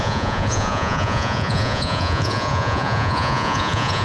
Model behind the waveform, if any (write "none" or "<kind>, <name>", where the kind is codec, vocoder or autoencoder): vocoder, Vocos